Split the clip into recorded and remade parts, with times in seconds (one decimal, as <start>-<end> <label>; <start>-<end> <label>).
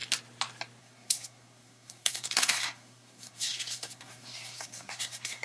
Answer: 0.0-0.8 recorded; 0.8-5.4 remade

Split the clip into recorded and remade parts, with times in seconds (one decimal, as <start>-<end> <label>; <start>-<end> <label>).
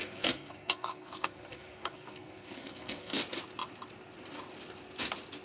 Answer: 0.0-3.2 remade; 3.2-5.4 recorded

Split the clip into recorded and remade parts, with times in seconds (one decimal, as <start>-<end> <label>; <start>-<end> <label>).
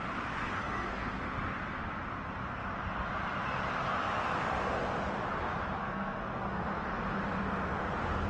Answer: 0.0-0.6 recorded; 0.6-1.2 remade; 1.2-5.8 recorded; 5.8-6.6 remade; 6.6-8.3 recorded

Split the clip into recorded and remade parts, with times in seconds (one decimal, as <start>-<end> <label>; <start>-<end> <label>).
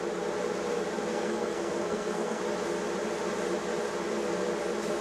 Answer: 0.0-1.1 recorded; 1.1-2.4 remade; 2.4-5.0 recorded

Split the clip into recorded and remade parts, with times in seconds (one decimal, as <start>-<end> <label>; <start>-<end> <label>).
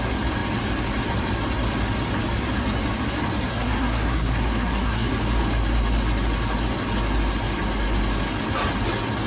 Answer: 0.0-3.5 recorded; 3.5-5.1 remade; 5.1-9.3 recorded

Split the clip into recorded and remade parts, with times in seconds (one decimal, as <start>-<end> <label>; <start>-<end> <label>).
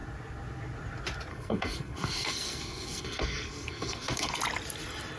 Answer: 0.0-1.3 recorded; 1.3-4.4 remade; 4.4-5.2 recorded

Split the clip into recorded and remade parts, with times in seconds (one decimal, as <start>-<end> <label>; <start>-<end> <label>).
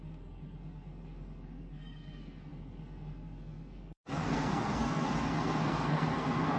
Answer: 0.0-6.6 remade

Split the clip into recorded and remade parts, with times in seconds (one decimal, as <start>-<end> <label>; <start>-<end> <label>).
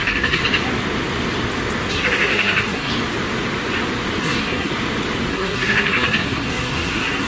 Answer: 0.0-0.4 remade; 0.4-1.9 recorded; 1.9-2.9 remade; 2.9-4.2 recorded; 4.2-4.7 remade; 4.7-5.3 recorded; 5.3-7.3 remade